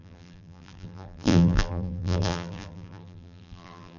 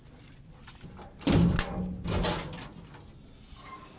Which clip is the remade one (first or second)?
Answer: first